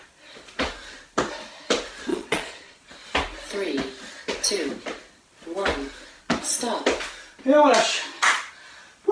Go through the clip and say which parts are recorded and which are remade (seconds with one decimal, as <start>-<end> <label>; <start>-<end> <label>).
0.0-2.1 recorded; 2.1-2.9 remade; 2.9-9.1 recorded